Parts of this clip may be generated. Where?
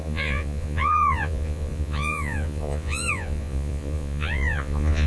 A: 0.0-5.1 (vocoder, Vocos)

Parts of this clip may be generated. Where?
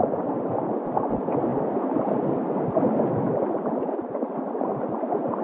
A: none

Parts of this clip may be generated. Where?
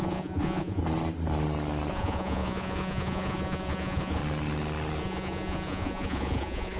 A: 0.0-0.8 (vocoder, Vocos); 1.9-4.2; 5.0-6.8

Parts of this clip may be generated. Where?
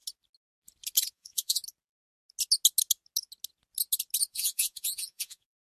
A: 1.1-1.6 (vocoder, Vocos); 4.3-5.6